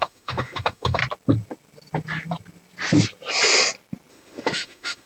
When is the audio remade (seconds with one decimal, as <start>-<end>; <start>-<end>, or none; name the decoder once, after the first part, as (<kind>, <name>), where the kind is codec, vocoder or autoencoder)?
0.0-1.0 (autoencoder, DAC-VAE); 4.1-5.1